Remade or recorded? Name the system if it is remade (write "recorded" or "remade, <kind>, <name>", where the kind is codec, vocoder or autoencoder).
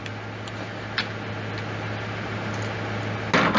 recorded